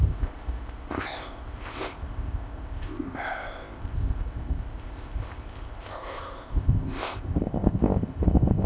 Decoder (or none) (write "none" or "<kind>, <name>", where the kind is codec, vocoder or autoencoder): codec, ZipCodec